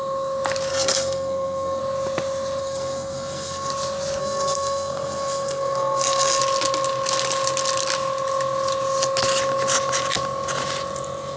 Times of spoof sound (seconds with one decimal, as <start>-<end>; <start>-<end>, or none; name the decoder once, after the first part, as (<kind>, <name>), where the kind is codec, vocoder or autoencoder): 0.7-1.8 (codec, SNAC); 2.6-3.7; 4.2-6.4

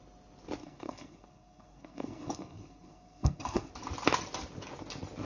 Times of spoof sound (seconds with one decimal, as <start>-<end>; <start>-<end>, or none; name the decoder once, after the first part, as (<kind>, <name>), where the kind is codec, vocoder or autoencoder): 0.6-3.7 (codec, SNAC)

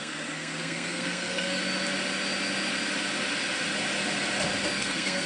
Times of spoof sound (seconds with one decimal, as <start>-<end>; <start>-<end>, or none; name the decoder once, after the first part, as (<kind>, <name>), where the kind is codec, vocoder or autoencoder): 0.0-1.6 (codec, SNAC); 4.8-5.3